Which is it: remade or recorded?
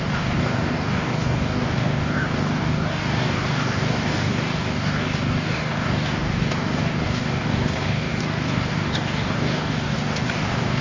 remade